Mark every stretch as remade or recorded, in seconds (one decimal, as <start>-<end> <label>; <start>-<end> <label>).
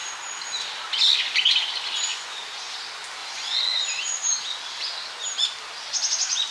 0.0-2.1 recorded; 2.1-2.7 remade; 2.7-3.2 recorded; 3.2-3.8 remade; 3.8-6.5 recorded